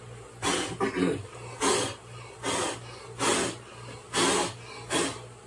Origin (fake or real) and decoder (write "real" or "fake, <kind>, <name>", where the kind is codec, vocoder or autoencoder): real